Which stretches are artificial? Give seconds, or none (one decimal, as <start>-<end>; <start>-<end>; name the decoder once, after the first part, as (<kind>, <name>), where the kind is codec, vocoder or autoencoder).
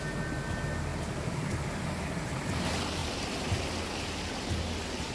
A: none